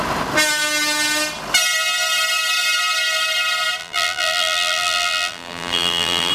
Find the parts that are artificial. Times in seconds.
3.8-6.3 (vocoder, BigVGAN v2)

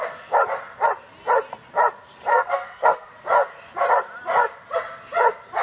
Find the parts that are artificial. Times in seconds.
2.3-3.1 (codec, SNAC)

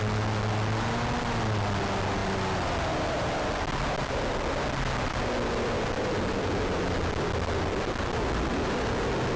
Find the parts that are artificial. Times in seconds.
none

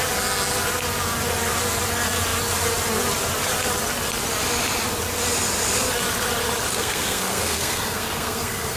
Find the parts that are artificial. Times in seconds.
6.7-8.8 (codec, SNAC)

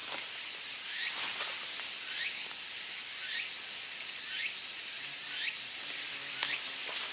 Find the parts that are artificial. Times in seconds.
none

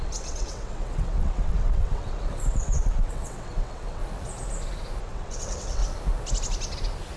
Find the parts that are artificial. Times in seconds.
0.0-4.0 (vocoder, WaveNeXt); 5.0-5.8

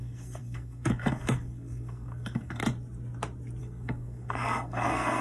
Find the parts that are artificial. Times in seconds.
0.0-2.6 (codec, SNAC); 3.6-5.2